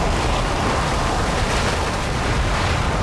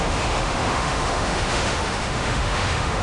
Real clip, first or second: first